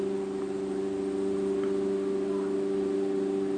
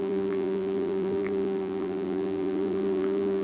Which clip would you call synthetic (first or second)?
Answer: second